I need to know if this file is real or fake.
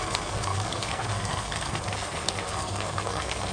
fake